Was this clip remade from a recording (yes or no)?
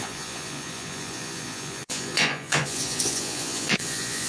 yes